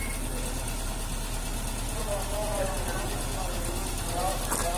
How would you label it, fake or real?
real